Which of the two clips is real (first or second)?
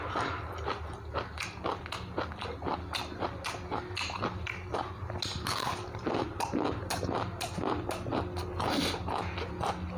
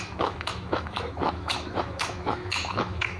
first